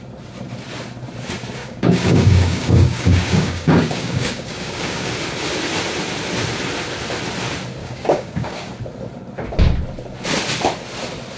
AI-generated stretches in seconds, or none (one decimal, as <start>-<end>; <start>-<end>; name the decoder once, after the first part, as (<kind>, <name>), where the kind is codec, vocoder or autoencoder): 1.6-5.1 (codec, DAC); 7.8-8.7